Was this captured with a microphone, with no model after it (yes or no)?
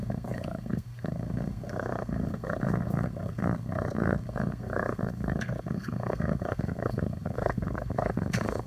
no